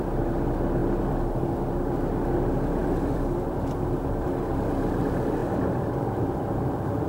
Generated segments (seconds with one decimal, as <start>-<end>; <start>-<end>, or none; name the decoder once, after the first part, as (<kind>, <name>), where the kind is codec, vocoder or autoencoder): 0.8-1.7 (vocoder, BigVGAN v2); 2.8-4.0; 5.4-7.1

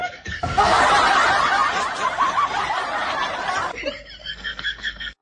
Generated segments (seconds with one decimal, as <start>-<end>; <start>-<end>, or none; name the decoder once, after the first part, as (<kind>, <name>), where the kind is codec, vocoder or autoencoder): 0.0-0.8 (codec, SNAC); 4.2-5.2

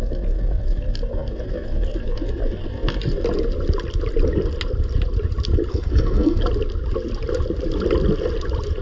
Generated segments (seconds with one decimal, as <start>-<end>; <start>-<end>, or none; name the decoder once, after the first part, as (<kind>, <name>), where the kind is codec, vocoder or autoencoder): 5.7-6.4 (codec, SNAC)